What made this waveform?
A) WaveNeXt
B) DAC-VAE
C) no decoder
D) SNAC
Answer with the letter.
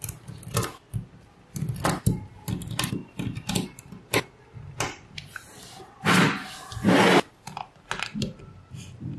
C